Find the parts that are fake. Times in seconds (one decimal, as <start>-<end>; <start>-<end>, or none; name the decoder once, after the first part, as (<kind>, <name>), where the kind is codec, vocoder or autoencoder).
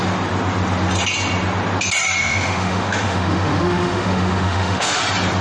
2.2-5.0 (autoencoder, DAC-VAE)